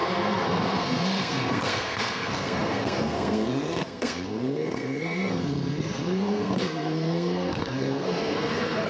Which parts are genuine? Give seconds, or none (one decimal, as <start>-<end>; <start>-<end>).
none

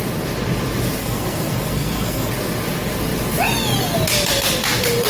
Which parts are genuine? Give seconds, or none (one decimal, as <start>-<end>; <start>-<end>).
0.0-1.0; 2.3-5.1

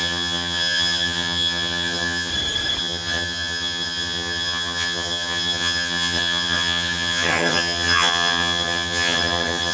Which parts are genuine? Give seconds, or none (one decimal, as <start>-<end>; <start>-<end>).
2.3-2.8

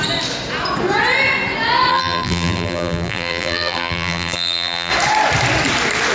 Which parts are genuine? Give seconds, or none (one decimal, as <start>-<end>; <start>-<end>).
0.0-1.9; 4.9-6.1

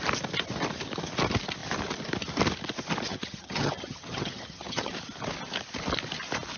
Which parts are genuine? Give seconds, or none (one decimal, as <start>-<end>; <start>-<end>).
0.0-3.1; 4.9-6.6